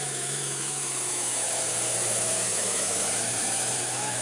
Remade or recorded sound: remade